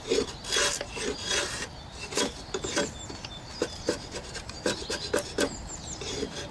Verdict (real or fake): real